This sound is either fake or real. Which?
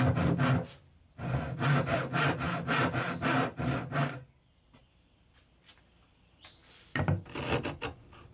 real